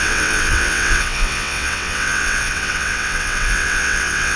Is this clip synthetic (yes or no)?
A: yes